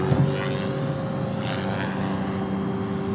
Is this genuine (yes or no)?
yes